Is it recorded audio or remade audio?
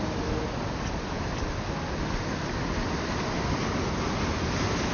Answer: recorded